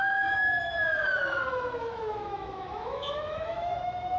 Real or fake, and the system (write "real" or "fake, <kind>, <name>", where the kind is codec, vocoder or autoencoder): fake, autoencoder, DAC-VAE